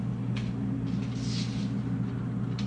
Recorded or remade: recorded